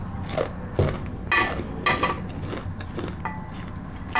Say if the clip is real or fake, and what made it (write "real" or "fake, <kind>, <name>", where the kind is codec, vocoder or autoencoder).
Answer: real